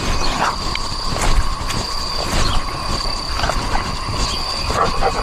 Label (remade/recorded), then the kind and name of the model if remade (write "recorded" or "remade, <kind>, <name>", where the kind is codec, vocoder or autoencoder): recorded